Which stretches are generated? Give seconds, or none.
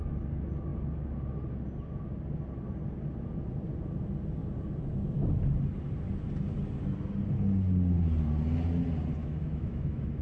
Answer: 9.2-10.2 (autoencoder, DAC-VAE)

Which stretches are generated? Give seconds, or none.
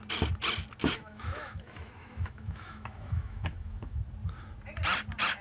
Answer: 0.8-4.0 (autoencoder, DAC-VAE)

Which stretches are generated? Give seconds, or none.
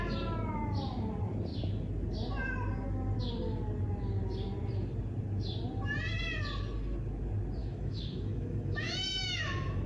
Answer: 7.6-9.9 (autoencoder, DAC-VAE)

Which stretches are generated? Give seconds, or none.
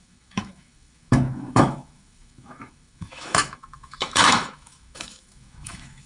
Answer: 0.0-6.1 (autoencoder, DAC-VAE)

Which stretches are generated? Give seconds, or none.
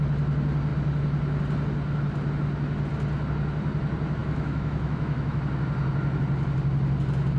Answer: 4.2-5.4 (autoencoder, DAC-VAE)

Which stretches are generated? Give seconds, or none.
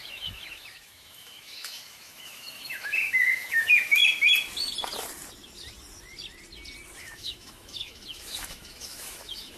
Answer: 0.0-4.0 (autoencoder, DAC-VAE); 7.0-9.6